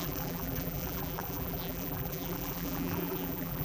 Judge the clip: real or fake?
fake